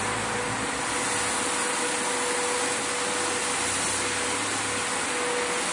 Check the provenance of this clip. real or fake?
real